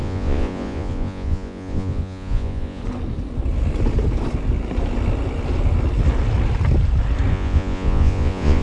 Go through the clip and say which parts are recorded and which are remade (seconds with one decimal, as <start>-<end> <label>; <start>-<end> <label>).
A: 0.0-2.8 remade; 2.8-7.3 recorded; 7.3-8.6 remade